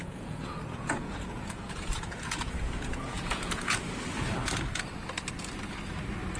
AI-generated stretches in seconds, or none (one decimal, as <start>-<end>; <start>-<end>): 0.0-3.8